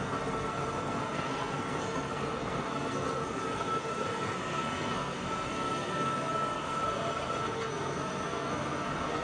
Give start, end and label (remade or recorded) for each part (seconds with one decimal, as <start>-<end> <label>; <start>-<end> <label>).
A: 0.0-9.2 remade